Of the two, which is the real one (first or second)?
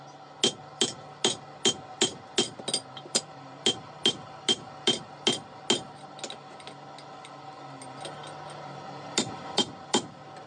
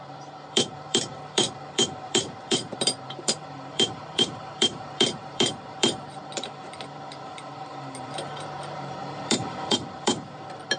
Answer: first